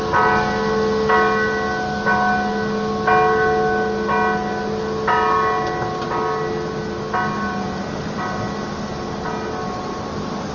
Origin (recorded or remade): recorded